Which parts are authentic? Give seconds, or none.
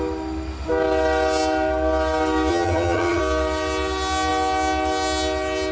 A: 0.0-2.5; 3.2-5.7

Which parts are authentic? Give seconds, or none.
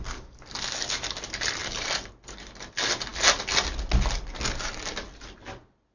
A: 0.0-5.9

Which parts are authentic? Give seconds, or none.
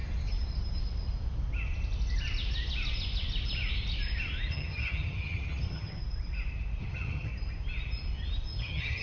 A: 0.0-4.5; 6.0-6.8; 7.3-8.6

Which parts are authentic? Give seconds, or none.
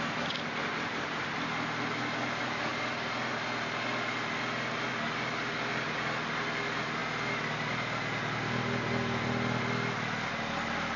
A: 0.0-11.0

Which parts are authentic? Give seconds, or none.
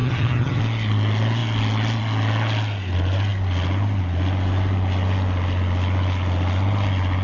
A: 0.6-7.2